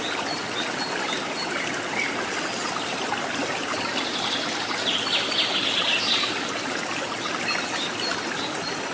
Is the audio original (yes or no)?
yes